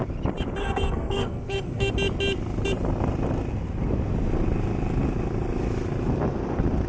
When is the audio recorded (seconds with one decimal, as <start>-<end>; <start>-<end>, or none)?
0.0-0.6; 1.9-6.9